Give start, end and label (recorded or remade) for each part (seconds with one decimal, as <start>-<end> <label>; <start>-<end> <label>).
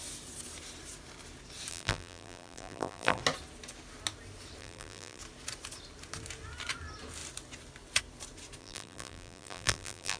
0.0-1.7 recorded; 1.7-3.2 remade; 3.2-4.6 recorded; 4.6-5.2 remade; 5.2-8.6 recorded; 8.6-10.2 remade